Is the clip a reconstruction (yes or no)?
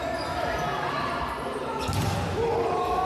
no